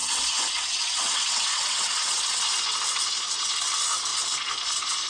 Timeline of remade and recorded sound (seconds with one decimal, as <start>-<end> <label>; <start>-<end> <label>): 0.0-2.4 remade; 2.4-5.1 recorded

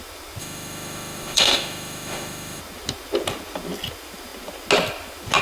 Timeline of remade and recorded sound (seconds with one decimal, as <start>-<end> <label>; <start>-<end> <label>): 0.0-0.4 recorded; 0.4-2.6 remade; 2.6-5.4 recorded

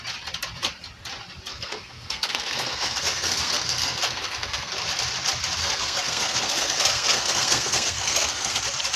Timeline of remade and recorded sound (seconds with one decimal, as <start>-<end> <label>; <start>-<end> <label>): 0.0-1.5 recorded; 1.5-4.7 remade; 4.7-5.6 recorded; 5.6-8.6 remade; 8.6-9.0 recorded

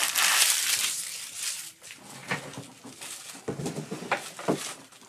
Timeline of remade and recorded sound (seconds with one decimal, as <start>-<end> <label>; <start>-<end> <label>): 0.0-2.2 remade; 2.2-3.5 recorded; 3.5-5.1 remade

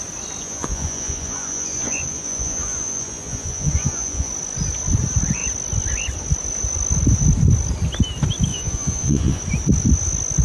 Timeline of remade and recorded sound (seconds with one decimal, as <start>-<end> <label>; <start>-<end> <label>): 0.0-0.4 recorded; 0.4-4.3 remade; 4.3-8.5 recorded; 8.5-9.4 remade; 9.4-10.4 recorded

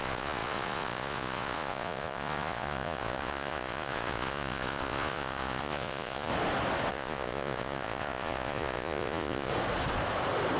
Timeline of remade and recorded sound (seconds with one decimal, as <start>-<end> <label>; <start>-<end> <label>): 0.0-6.3 remade; 6.3-6.9 recorded; 6.9-9.5 remade; 9.5-10.6 recorded